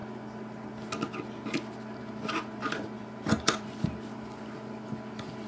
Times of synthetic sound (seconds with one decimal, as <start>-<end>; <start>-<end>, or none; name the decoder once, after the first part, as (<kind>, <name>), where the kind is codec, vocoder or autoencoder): 2.6-3.7 (vocoder, BigVGAN v2)